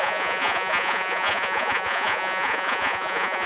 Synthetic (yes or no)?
yes